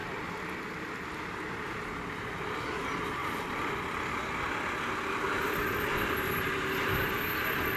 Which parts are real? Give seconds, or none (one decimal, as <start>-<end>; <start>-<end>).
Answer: 1.2-3.2; 3.8-7.8